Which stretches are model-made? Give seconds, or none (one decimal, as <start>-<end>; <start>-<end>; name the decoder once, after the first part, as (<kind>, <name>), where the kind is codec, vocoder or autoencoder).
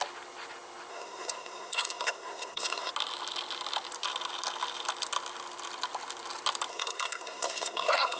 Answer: 0.9-2.9 (codec, SNAC); 6.7-8.2